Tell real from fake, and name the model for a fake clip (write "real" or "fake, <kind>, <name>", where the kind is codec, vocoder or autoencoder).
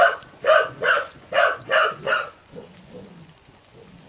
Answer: fake, vocoder, Vocos